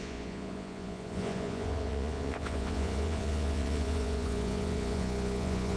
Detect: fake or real fake